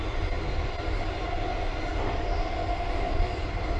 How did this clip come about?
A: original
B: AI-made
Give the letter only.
A